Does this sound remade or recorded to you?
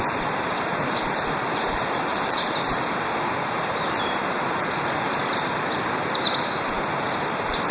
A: remade